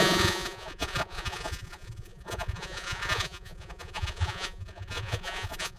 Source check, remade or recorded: remade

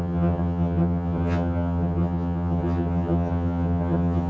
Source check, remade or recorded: remade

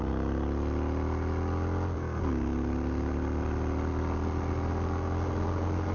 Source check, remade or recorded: recorded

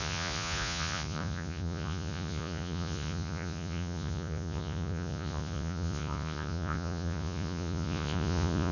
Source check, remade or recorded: remade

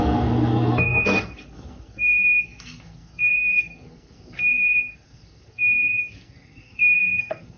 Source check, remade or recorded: remade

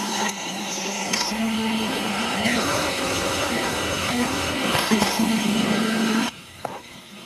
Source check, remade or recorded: remade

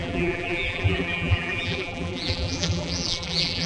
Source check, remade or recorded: remade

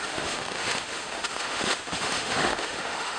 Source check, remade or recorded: remade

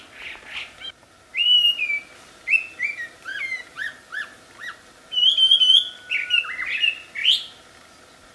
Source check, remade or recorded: recorded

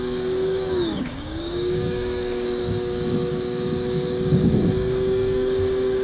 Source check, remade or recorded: remade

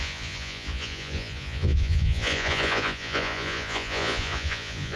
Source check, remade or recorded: remade